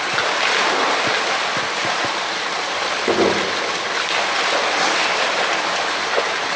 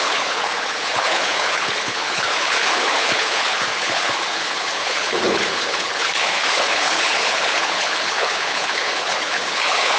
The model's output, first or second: second